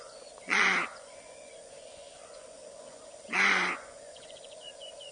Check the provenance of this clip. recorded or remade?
remade